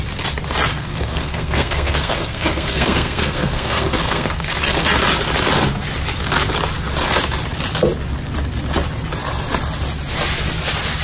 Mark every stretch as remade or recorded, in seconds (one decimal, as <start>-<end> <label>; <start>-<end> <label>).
0.0-0.7 recorded; 0.7-4.5 remade; 4.5-11.0 recorded